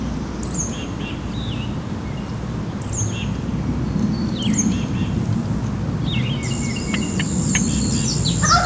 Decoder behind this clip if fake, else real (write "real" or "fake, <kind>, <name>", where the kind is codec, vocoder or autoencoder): real